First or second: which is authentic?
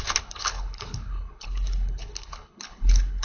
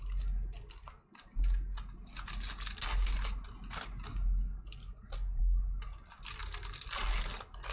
second